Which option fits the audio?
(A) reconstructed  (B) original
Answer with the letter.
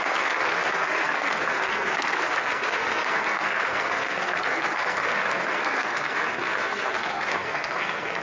A